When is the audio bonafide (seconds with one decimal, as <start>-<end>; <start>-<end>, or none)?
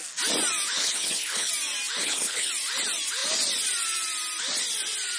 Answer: 0.0-0.8; 1.5-2.0; 2.5-5.2